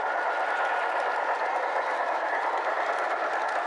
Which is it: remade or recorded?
recorded